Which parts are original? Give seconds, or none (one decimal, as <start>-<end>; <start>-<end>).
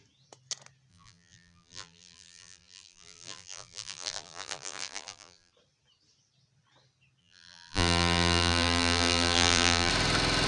0.0-0.9; 5.5-7.2; 9.9-10.5